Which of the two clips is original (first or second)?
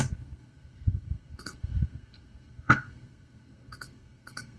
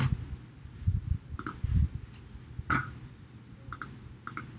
second